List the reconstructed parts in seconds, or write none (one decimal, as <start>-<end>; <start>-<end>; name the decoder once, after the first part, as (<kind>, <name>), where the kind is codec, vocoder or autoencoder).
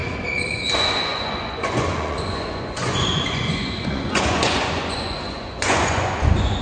0.0-6.6 (vocoder, Vocos)